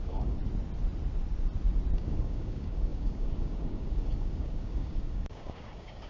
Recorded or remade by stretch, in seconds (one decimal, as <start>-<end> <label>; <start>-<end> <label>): 0.0-0.4 remade; 0.4-2.0 recorded; 2.0-6.1 remade